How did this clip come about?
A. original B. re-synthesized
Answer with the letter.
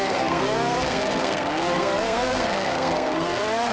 B